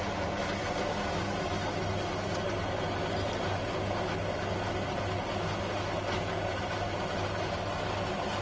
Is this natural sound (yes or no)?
yes